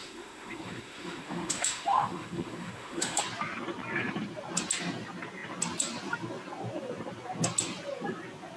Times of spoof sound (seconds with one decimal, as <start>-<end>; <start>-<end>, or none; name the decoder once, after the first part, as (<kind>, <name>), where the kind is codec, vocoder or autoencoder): 0.0-3.2 (autoencoder, DAC-VAE)